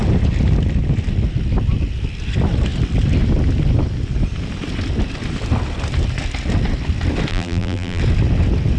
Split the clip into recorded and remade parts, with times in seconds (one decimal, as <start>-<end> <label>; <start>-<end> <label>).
0.0-7.3 recorded; 7.3-8.0 remade; 8.0-8.8 recorded